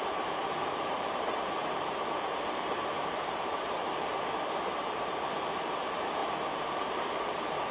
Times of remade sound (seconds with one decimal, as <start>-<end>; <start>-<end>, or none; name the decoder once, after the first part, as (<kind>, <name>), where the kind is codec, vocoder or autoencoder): 0.0-4.1 (vocoder, BigVGAN v2); 4.6-7.7